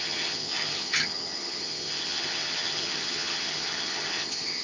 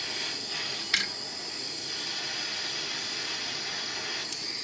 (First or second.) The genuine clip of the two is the second